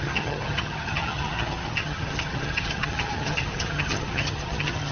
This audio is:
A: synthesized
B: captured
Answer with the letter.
A